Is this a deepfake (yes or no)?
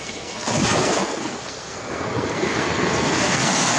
yes